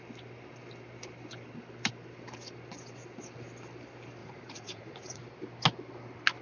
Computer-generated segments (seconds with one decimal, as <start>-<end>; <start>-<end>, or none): 4.2-5.2